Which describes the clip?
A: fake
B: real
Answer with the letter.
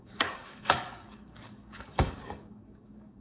A